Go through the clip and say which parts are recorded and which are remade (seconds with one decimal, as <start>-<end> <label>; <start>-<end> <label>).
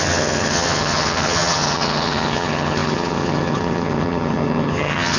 0.0-5.2 remade